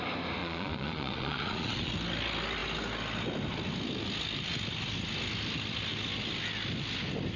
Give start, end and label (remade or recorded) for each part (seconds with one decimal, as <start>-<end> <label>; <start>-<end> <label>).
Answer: 0.0-0.4 recorded; 0.4-1.9 remade; 1.9-7.4 recorded